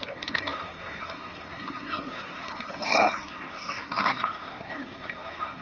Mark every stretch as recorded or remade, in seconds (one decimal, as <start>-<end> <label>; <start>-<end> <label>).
0.0-5.6 remade